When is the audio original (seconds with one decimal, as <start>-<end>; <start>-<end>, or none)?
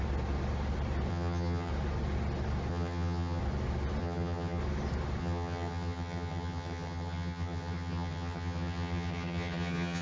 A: 0.0-1.1; 1.7-2.7; 3.4-4.0; 4.6-5.2